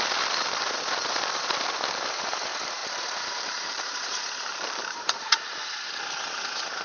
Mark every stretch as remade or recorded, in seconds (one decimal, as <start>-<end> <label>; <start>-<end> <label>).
0.0-2.8 recorded; 2.8-5.3 remade; 5.3-6.8 recorded